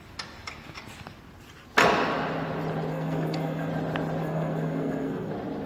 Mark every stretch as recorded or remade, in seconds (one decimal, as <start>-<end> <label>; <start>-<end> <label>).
0.0-2.9 recorded; 2.9-3.7 remade; 3.7-4.2 recorded; 4.2-5.3 remade; 5.3-5.7 recorded